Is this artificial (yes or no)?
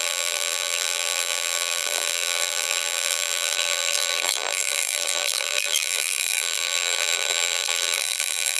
yes